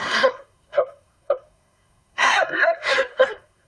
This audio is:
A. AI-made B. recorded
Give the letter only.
A